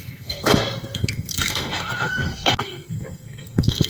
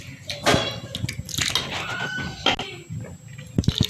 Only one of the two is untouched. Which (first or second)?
second